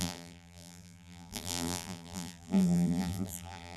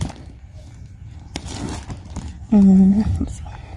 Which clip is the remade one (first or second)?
first